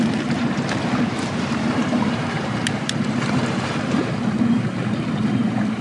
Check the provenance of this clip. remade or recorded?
remade